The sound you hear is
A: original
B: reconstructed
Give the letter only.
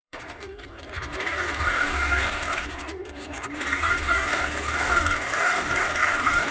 B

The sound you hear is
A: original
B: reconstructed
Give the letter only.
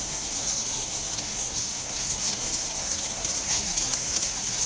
B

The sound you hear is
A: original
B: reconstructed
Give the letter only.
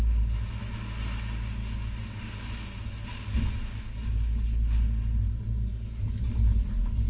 A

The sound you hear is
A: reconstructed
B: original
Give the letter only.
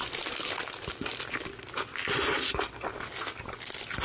B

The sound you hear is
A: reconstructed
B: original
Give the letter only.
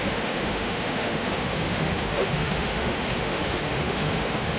A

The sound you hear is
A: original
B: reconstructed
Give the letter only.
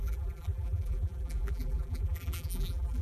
B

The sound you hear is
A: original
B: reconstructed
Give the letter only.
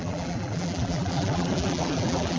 B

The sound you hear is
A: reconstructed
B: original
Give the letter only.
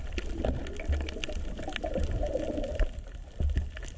B